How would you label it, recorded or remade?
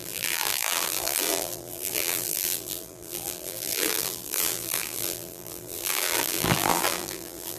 remade